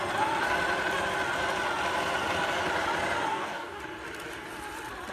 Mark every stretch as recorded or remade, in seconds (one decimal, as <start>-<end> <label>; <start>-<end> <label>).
0.0-3.3 recorded; 3.3-3.8 remade; 3.8-5.1 recorded